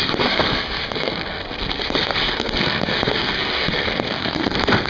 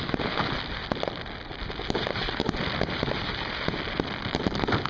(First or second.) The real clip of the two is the second